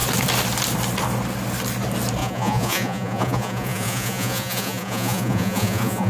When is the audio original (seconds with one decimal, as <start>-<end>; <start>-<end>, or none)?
0.0-2.2